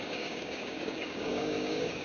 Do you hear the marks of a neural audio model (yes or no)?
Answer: yes